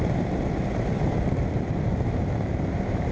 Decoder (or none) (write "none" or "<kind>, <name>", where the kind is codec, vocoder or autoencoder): vocoder, BigVGAN v2